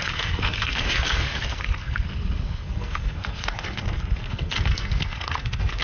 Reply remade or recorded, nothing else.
remade